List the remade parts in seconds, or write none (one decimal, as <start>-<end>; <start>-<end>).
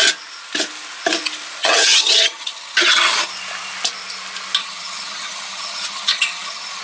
1.6-3.3; 4.6-6.8